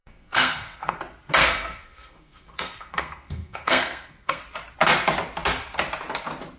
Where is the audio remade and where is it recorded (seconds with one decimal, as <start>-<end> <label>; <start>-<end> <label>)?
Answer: 0.0-1.0 remade; 1.0-1.4 recorded; 1.4-4.4 remade; 4.4-6.6 recorded